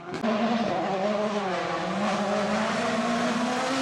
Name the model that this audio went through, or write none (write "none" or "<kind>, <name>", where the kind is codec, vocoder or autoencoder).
none